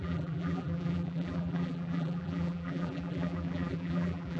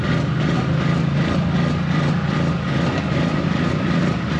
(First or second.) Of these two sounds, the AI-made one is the first